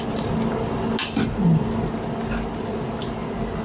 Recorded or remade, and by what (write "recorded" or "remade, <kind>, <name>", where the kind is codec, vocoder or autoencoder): recorded